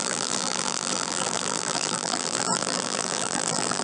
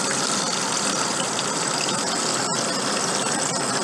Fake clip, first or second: first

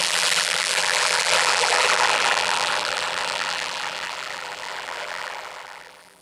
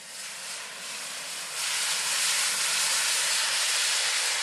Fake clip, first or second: first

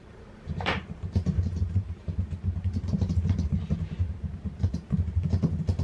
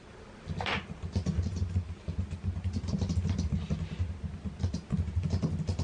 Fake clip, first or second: first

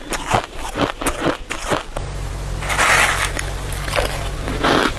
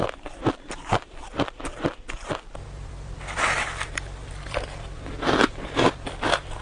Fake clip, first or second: second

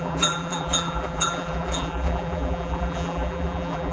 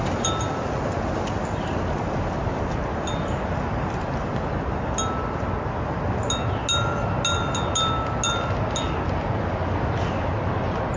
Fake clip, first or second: first